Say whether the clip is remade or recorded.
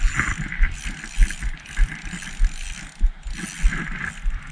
recorded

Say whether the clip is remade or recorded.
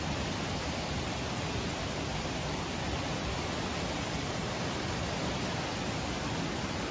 recorded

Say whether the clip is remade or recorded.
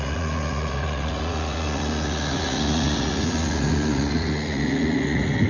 remade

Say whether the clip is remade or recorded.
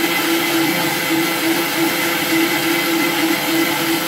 recorded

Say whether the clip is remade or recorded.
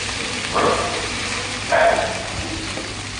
recorded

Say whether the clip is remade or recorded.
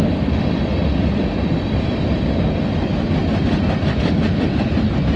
recorded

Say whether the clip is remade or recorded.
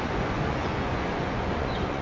remade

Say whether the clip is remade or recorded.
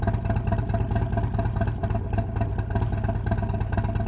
recorded